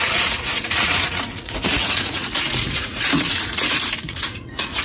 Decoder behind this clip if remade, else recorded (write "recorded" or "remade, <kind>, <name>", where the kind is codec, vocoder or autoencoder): remade, vocoder, Vocos